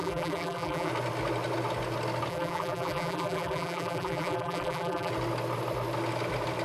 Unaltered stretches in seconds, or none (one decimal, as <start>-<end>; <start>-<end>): 0.9-2.3; 5.1-6.6